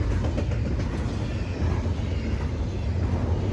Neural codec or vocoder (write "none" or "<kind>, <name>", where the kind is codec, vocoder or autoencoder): none